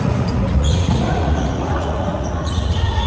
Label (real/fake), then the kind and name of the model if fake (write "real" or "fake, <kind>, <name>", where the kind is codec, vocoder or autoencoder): fake, vocoder, Vocos